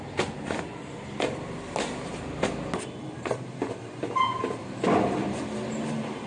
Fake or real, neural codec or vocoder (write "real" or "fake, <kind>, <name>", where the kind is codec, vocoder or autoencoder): real